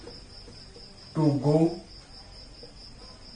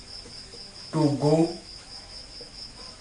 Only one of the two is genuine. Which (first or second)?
first